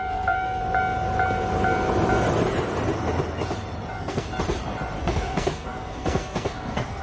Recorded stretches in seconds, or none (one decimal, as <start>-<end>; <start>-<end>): 0.6-3.9; 4.3-5.0